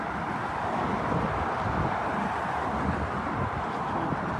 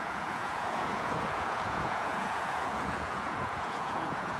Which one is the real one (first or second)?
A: first